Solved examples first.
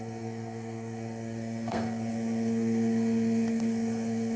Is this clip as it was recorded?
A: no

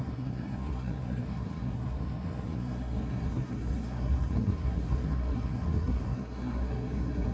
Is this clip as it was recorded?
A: no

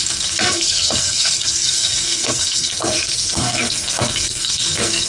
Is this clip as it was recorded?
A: no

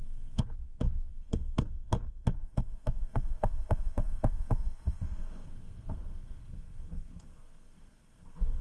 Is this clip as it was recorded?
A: no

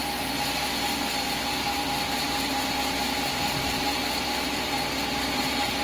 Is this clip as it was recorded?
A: yes